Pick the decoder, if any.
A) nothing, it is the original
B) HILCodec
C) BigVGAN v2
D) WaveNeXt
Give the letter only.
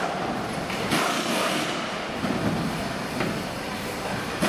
A